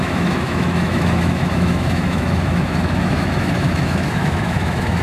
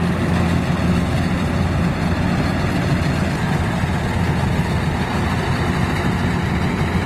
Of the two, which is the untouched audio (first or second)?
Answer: second